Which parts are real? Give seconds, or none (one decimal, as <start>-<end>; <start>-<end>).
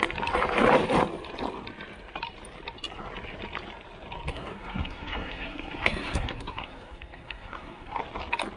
0.0-4.3; 8.0-8.6